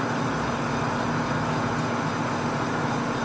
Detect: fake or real real